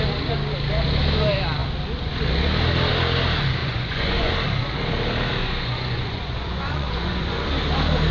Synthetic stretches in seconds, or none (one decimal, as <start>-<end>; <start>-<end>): 3.6-4.3; 5.4-7.5